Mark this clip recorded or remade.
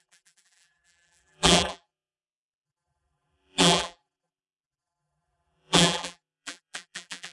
remade